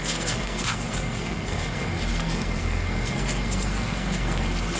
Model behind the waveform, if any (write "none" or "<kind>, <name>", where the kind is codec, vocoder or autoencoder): codec, SNAC